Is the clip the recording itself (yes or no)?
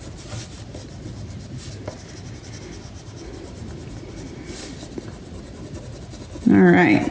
yes